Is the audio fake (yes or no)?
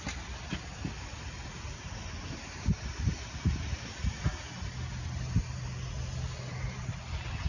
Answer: no